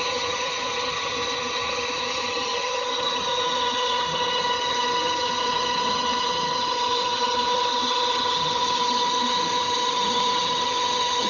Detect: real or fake fake